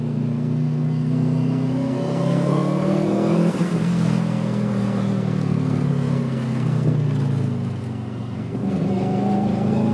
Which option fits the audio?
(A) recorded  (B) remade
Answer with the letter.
B